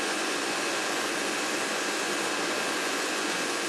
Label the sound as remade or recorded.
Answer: remade